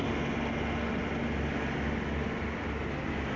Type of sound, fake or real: real